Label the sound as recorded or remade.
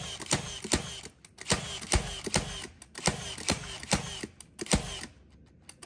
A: recorded